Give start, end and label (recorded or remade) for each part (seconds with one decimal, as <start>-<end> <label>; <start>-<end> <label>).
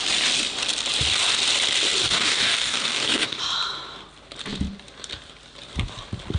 0.0-2.0 recorded; 2.0-3.4 remade; 3.4-6.4 recorded